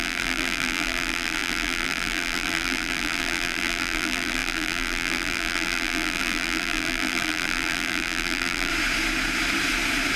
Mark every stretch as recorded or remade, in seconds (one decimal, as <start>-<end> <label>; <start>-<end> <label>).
0.0-8.7 remade; 8.7-10.2 recorded